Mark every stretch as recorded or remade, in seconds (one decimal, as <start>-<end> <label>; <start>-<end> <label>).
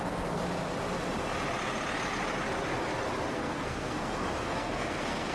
0.0-0.4 remade; 0.4-3.3 recorded; 3.3-5.3 remade